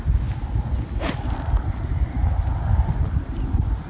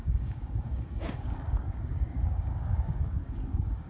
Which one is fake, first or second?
second